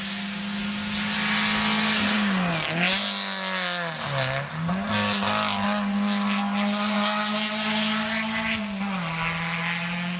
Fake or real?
real